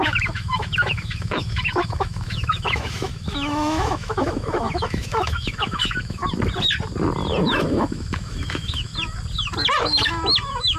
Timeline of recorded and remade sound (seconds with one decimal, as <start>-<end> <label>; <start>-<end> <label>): 0.0-6.2 remade; 6.2-7.4 recorded; 7.4-8.9 remade; 8.9-9.8 recorded; 9.8-10.8 remade